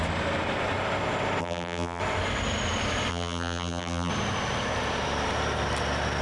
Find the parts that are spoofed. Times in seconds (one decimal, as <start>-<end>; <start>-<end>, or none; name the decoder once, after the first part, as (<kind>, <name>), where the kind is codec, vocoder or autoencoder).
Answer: 1.4-2.0 (vocoder, BigVGAN v2); 3.1-4.1